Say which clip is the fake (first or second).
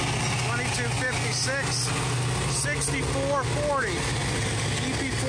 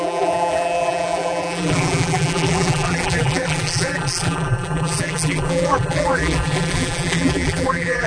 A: second